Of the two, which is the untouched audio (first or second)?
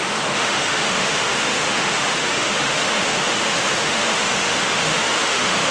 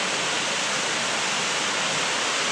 second